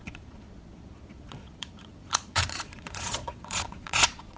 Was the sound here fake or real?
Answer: fake